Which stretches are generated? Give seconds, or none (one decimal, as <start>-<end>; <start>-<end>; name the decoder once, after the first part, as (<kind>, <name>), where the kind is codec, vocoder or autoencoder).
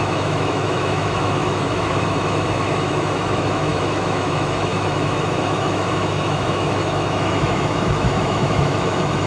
0.0-9.3 (autoencoder, DAC-VAE)